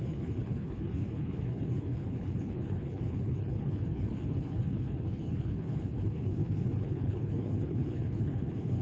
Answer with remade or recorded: remade